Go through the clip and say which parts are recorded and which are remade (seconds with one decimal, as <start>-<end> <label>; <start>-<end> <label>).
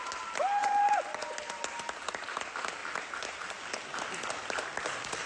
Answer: 0.0-0.6 recorded; 0.6-1.3 remade; 1.3-5.3 recorded